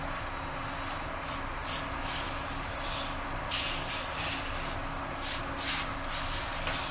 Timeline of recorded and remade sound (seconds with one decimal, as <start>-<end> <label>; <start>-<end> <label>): 0.0-1.6 recorded; 1.6-4.4 remade; 4.4-6.9 recorded